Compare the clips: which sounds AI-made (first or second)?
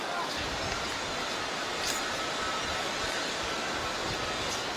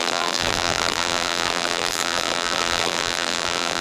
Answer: second